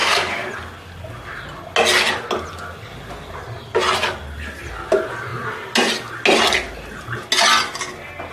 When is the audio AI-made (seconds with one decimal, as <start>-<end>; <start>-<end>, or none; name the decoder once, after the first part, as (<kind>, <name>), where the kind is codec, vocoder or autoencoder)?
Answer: 0.0-0.5 (codec, DAC)